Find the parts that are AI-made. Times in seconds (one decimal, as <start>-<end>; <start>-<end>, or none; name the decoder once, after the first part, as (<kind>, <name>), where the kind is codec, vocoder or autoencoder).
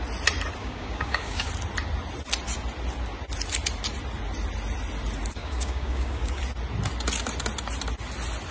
0.6-1.5 (codec, DAC); 5.4-6.4